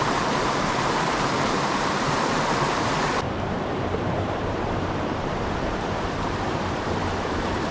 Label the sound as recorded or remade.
remade